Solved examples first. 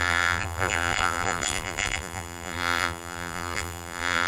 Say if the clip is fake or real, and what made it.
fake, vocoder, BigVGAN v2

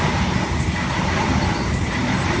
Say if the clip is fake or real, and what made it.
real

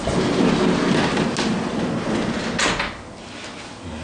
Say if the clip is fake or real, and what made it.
real